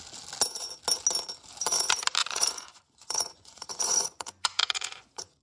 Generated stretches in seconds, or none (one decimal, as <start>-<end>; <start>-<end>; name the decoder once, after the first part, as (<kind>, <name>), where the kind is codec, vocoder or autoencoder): 2.2-5.4 (vocoder, Vocos)